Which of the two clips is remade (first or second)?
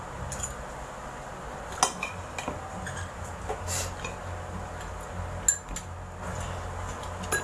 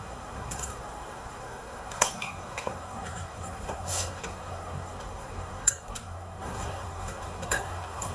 second